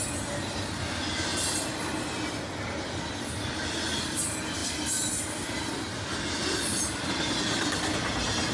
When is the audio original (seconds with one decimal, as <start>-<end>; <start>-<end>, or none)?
0.0-1.3; 2.4-4.6; 7.1-8.5